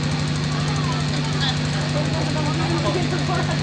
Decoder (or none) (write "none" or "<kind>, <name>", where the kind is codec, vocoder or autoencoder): none